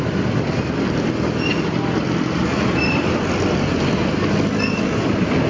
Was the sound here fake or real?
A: real